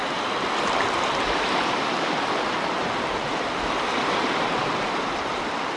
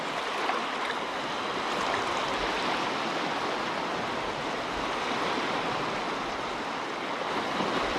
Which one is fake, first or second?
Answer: first